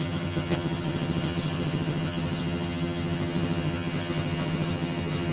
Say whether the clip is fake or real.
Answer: fake